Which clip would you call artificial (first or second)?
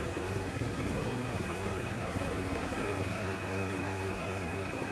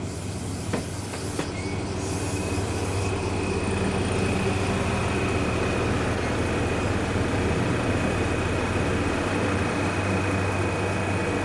first